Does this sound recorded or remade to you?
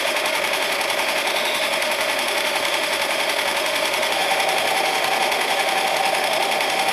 remade